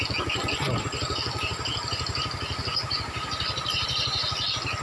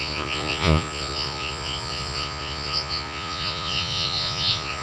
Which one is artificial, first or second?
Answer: second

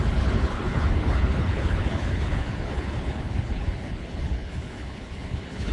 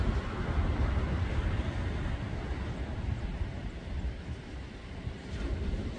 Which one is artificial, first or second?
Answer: first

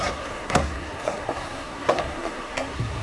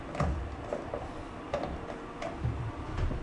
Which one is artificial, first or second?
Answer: first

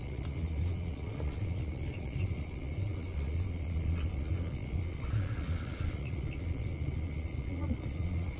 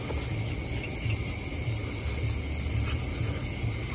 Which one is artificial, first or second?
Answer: first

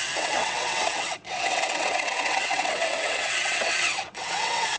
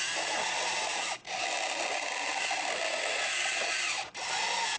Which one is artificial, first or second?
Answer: first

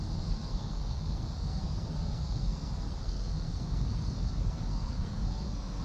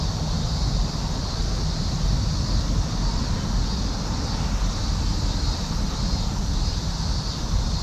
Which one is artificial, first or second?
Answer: first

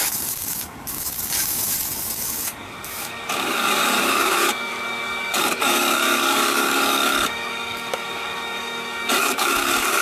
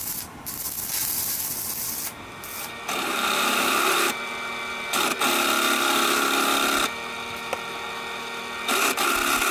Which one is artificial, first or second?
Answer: first